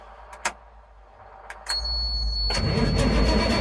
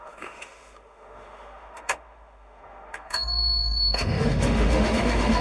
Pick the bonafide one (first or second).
first